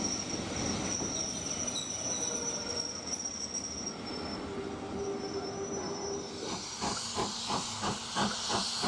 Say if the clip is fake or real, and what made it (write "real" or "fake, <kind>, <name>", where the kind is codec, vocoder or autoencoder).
real